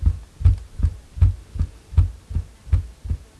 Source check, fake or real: real